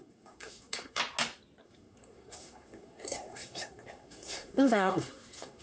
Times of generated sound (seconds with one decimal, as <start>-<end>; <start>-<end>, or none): 0.0-1.0; 1.6-5.6